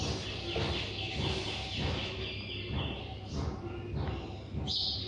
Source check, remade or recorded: recorded